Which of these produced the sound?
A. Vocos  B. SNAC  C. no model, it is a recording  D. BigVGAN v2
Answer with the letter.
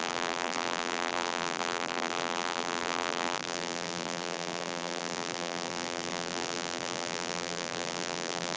D